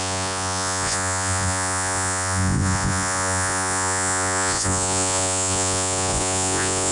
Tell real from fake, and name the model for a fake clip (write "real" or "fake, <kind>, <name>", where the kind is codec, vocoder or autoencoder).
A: fake, vocoder, Vocos